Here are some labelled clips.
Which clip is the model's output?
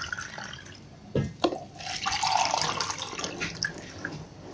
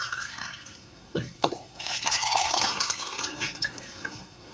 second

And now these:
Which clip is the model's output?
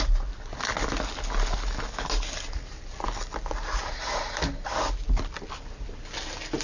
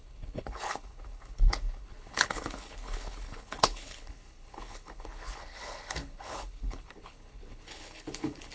second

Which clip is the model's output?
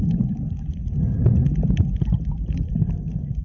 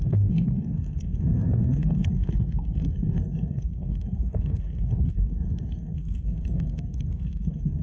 second